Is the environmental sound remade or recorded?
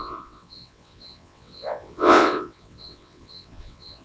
remade